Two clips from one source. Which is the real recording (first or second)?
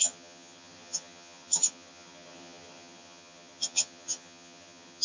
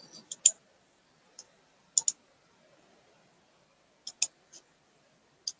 second